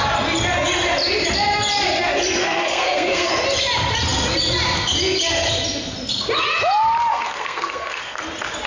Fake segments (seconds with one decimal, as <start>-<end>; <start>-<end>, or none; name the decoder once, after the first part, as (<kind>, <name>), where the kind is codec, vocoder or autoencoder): 2.4-3.3 (codec, SNAC); 7.1-8.2